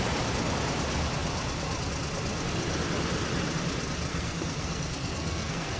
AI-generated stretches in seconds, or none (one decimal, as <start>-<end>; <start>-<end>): 4.1-5.8